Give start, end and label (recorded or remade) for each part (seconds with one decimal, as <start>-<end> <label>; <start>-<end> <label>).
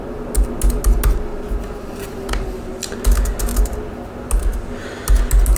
0.0-5.6 recorded